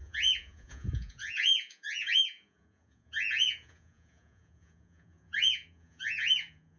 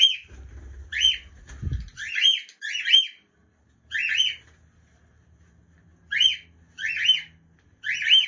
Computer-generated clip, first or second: first